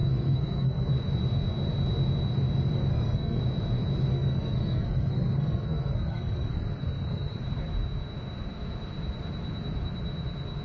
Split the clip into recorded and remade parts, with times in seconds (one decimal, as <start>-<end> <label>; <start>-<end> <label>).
0.0-0.9 remade; 0.9-2.9 recorded; 2.9-3.4 remade; 3.4-4.1 recorded; 4.1-7.4 remade; 7.4-10.6 recorded